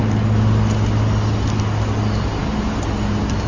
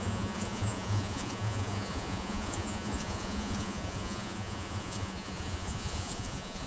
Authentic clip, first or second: first